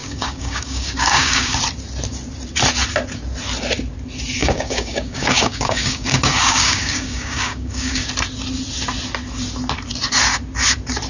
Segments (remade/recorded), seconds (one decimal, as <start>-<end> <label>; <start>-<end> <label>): 0.0-1.6 remade; 1.6-4.4 recorded; 4.4-8.1 remade; 8.1-11.1 recorded